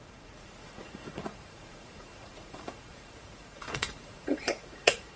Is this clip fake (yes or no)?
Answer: yes